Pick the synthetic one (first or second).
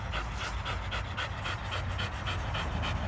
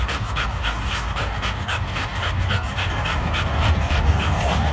second